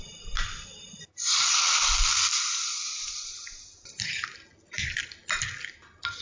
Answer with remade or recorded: recorded